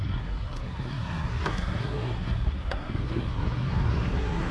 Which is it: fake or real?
fake